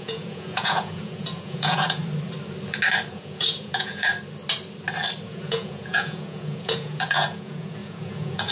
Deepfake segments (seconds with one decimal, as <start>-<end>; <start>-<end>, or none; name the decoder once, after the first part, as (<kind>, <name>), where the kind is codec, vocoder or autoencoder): 0.0-2.0 (vocoder, Vocos); 3.1-4.1; 5.2-8.5